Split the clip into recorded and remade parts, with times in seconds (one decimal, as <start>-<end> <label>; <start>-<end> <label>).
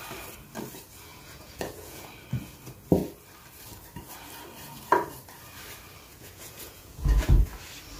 0.0-1.1 recorded; 1.1-2.1 remade; 2.1-6.1 recorded; 6.1-7.3 remade; 7.3-8.0 recorded